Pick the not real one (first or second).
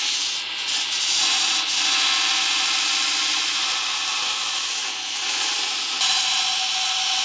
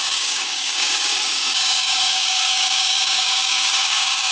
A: second